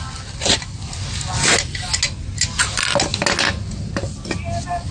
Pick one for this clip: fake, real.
real